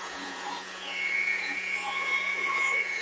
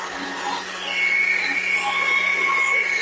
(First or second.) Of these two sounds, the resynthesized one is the first